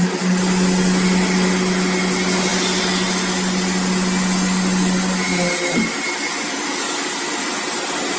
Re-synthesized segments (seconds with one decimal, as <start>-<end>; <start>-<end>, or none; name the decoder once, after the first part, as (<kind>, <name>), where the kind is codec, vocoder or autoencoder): none